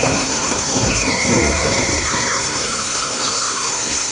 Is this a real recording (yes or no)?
no